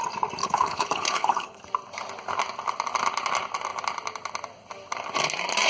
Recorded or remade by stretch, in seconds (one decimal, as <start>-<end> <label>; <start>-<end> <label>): 0.0-0.4 recorded; 0.4-1.6 remade; 1.6-5.7 recorded